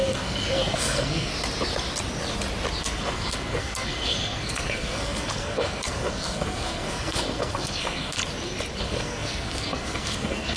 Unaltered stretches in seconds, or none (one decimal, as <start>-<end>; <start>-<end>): 1.3-2.8; 8.2-8.8